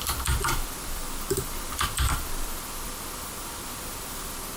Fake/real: fake